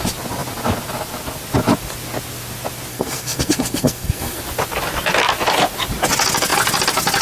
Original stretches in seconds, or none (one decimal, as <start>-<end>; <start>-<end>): 0.0-2.9; 4.4-7.2